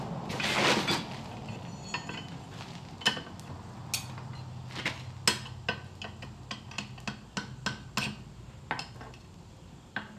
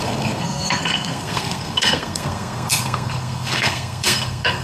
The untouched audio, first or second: first